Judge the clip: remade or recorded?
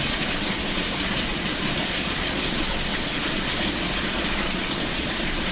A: remade